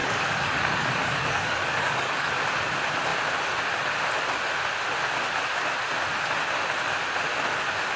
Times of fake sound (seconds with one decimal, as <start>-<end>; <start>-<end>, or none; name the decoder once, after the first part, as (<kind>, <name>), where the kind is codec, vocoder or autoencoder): 0.0-2.3 (codec, DAC)